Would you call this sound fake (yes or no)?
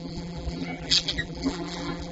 yes